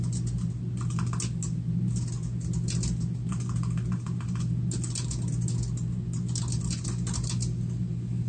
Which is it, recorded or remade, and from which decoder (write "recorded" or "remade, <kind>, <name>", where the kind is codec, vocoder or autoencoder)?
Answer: recorded